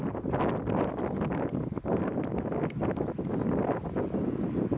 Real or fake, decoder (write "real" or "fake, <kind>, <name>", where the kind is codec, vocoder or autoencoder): real